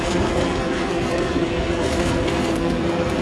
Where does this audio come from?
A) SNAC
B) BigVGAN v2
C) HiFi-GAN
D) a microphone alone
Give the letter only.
A